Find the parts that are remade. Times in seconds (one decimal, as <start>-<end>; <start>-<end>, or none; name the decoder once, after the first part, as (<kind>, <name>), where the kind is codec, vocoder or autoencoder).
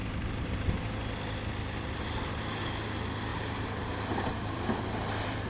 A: 0.0-1.1 (vocoder, BigVGAN v2); 3.3-5.5